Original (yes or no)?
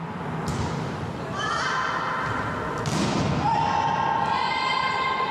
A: yes